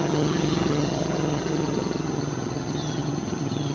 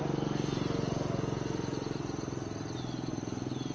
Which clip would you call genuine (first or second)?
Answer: second